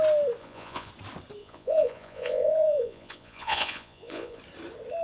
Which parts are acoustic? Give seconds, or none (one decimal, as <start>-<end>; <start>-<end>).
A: 0.0-0.4; 0.9-1.4; 4.4-5.0